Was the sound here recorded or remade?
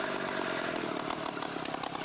recorded